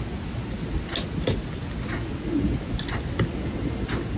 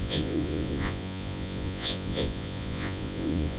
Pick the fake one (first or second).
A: second